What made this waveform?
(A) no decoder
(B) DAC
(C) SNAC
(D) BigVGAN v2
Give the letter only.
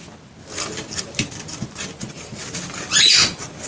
A